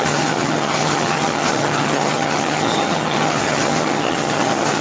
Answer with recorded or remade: remade